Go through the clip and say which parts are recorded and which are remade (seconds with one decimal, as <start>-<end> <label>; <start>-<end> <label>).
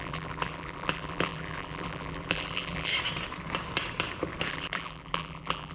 0.0-2.9 remade; 2.9-4.5 recorded; 4.5-5.7 remade